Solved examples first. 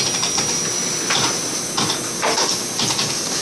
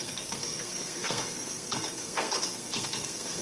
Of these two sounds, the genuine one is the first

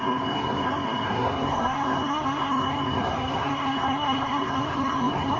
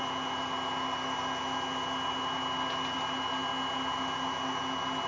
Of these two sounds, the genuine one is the second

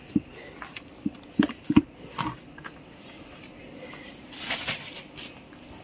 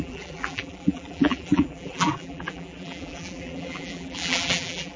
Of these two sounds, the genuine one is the first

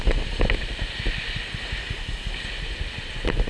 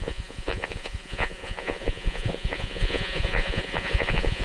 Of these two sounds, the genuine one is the first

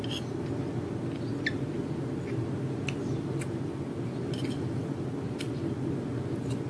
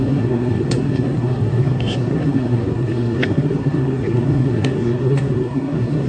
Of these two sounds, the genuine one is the first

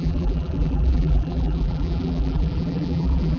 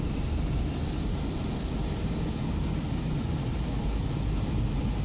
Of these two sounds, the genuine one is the second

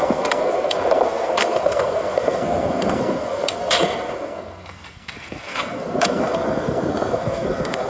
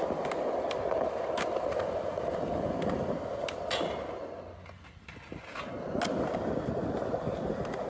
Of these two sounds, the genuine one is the second